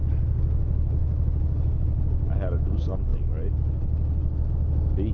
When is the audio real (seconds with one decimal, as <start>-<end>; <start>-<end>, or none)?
0.0-5.1